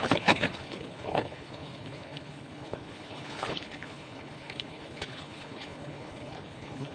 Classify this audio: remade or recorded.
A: remade